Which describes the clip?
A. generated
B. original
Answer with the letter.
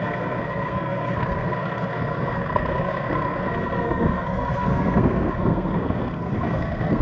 A